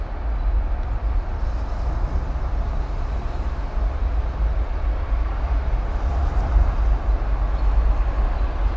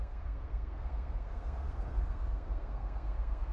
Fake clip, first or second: second